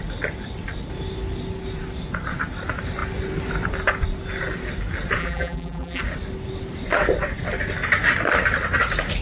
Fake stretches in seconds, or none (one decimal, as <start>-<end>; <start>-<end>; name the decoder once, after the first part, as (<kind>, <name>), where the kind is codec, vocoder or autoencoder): 5.2-6.0 (vocoder, BigVGAN v2)